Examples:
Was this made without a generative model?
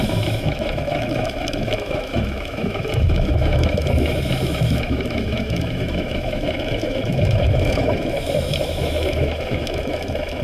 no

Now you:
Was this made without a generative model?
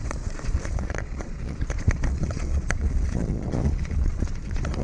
no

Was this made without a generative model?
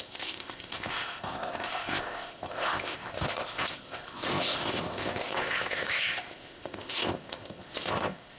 no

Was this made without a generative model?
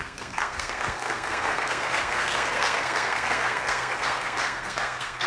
no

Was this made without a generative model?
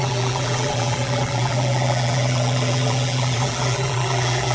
no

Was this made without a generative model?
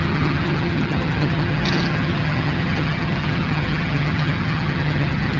no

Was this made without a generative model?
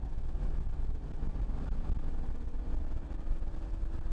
yes